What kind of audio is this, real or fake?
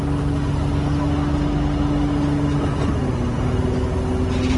real